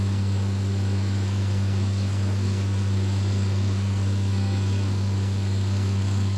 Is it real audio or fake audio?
fake